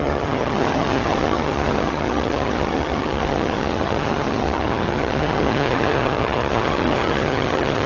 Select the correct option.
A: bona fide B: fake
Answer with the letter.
B